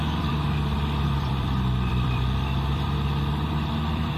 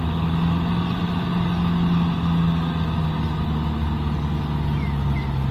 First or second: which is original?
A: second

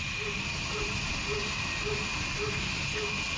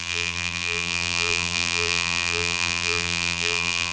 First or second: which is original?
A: first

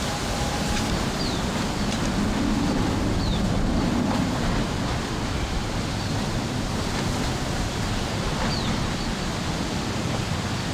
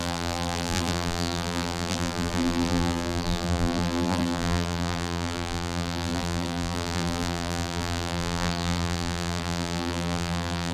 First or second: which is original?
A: first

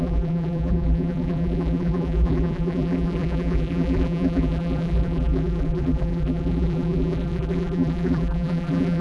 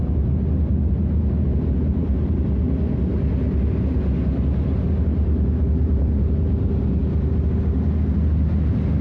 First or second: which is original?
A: second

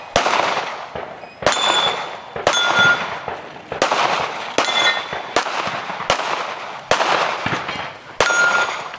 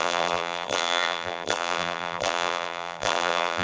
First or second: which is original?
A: first